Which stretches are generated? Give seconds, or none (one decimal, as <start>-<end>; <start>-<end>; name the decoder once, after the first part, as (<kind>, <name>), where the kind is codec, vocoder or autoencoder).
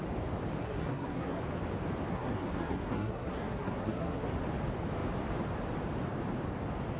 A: 0.6-1.4 (codec, SNAC); 2.1-4.3